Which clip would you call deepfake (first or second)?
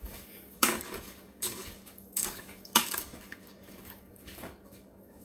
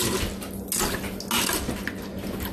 first